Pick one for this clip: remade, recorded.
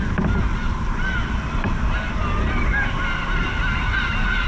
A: recorded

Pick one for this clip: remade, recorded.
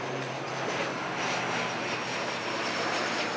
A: remade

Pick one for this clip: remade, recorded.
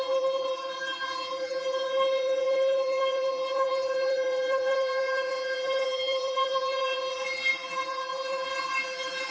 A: remade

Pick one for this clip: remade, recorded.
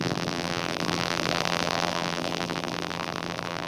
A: remade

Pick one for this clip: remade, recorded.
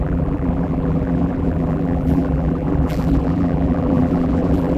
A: remade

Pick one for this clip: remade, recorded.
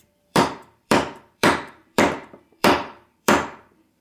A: remade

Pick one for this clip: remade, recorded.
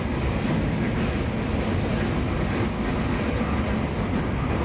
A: recorded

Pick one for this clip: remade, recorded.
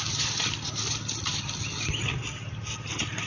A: recorded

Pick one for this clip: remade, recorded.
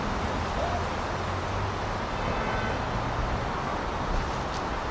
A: recorded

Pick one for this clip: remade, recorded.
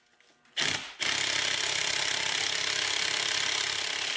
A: recorded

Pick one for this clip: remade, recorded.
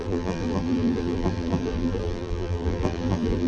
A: remade